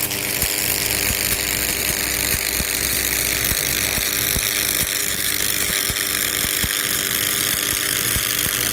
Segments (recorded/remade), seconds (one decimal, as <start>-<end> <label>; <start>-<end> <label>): 0.0-5.0 recorded; 5.0-5.7 remade; 5.7-8.7 recorded